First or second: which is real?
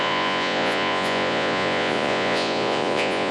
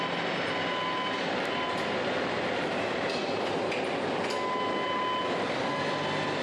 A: second